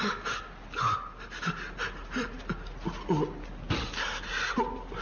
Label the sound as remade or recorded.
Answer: recorded